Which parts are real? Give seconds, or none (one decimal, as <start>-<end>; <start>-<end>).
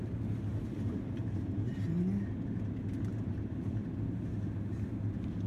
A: 0.0-0.5; 1.2-3.1; 3.7-5.5